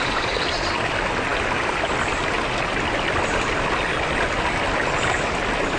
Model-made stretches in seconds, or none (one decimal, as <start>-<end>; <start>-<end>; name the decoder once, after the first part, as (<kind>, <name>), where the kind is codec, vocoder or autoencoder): none